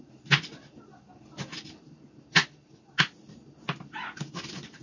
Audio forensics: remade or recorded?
recorded